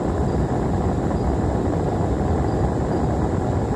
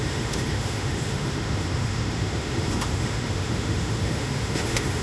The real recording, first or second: first